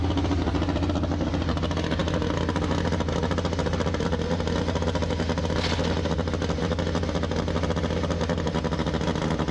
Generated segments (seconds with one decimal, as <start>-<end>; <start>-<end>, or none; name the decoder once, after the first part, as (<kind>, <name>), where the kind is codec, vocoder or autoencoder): none